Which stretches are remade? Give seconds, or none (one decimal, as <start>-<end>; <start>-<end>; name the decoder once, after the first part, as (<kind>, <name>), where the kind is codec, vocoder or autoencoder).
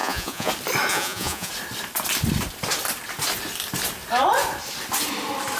0.0-0.5 (vocoder, Vocos); 0.9-1.5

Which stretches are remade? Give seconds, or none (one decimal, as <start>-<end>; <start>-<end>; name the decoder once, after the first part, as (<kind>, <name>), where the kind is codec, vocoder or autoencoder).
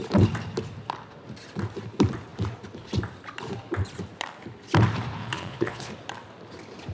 5.2-5.9 (vocoder, Vocos)